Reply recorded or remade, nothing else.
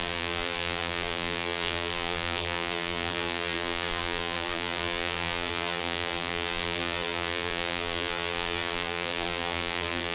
remade